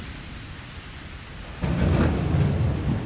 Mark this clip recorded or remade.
recorded